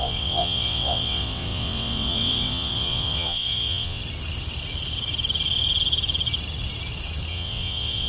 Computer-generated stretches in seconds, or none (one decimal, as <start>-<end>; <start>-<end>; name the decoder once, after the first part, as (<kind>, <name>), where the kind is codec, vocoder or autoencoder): 0.0-4.0 (vocoder, WaveNeXt); 7.3-8.1